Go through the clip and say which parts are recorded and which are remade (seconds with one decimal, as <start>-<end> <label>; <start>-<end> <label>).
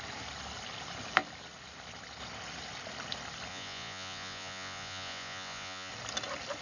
0.0-3.5 recorded; 3.5-5.9 remade; 5.9-6.6 recorded